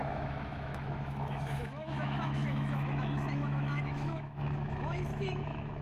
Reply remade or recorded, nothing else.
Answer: remade